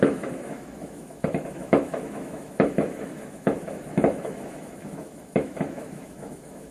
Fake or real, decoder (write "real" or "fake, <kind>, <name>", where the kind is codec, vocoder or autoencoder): fake, autoencoder, DAC-VAE